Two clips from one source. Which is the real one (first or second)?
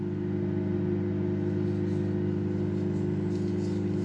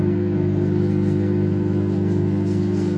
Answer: first